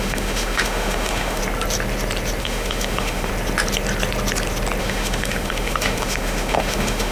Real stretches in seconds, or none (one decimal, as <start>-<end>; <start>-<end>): 1.4-2.4; 3.3-4.8